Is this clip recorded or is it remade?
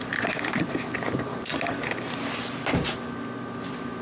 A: recorded